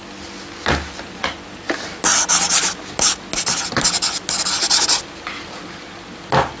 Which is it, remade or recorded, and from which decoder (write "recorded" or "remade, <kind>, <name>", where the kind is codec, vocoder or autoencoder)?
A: recorded